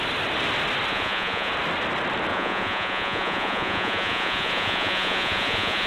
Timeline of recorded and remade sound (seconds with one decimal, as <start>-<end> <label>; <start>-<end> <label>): 0.0-0.9 recorded; 0.9-1.5 remade; 1.5-2.3 recorded; 2.3-5.9 remade